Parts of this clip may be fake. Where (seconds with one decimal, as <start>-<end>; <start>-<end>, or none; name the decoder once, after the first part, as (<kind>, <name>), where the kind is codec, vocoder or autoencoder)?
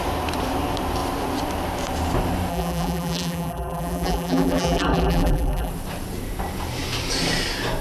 2.5-5.7 (vocoder, BigVGAN v2)